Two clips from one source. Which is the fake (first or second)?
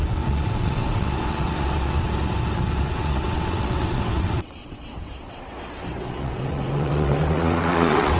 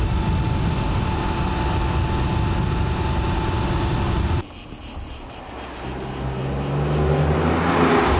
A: first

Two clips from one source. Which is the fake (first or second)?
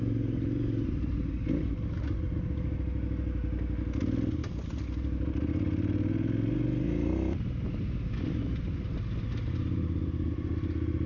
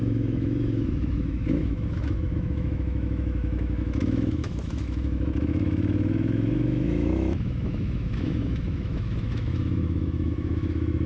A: second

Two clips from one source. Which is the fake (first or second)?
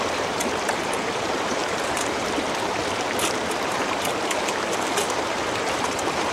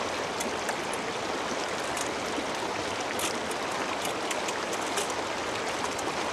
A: first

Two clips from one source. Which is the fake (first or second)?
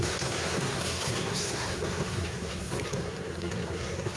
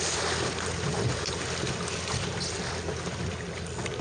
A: first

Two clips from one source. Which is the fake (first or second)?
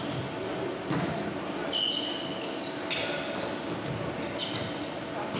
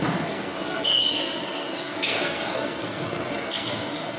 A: second